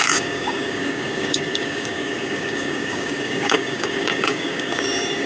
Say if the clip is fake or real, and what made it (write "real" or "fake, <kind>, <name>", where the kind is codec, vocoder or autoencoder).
fake, codec, DAC